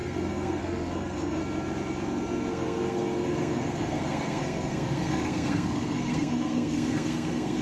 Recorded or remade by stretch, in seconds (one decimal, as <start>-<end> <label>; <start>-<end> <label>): 0.0-1.4 remade; 1.4-2.5 recorded; 2.5-7.6 remade